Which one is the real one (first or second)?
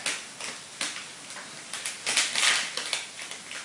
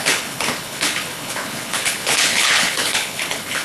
first